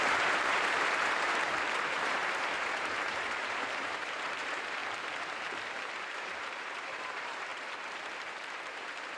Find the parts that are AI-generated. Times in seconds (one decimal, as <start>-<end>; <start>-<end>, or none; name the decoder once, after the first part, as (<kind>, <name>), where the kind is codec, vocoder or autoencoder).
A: 0.0-4.8 (vocoder, BigVGAN v2); 6.0-9.2